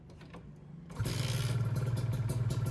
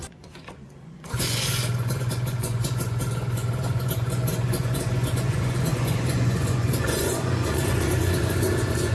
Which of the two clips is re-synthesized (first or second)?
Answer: second